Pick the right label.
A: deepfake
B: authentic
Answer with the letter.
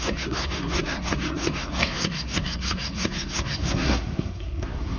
A